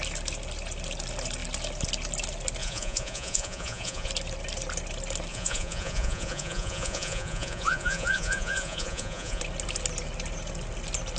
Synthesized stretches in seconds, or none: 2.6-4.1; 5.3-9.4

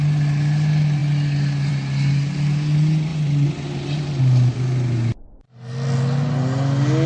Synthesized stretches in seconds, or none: none

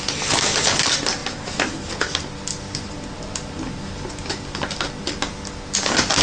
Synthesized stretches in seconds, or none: none

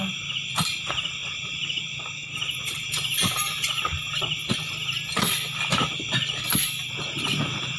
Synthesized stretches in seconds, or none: 0.0-4.4; 5.8-7.8

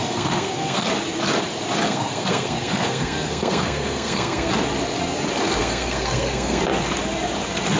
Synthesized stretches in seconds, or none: 0.0-0.9; 1.9-4.5; 5.6-6.6